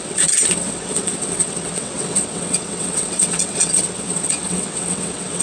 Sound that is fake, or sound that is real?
fake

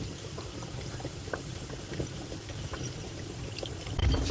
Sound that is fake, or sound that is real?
fake